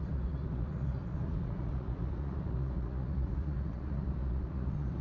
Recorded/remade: remade